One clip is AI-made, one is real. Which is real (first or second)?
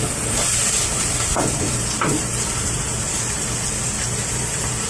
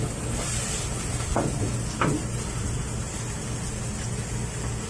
second